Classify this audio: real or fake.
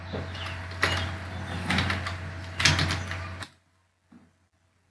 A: real